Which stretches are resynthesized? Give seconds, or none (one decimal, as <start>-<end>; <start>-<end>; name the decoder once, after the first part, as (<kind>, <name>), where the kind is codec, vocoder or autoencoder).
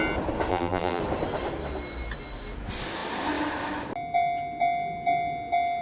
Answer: 0.5-1.0 (vocoder, BigVGAN v2)